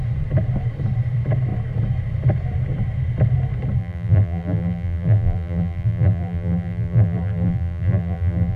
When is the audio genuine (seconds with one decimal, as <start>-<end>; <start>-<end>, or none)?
0.0-3.8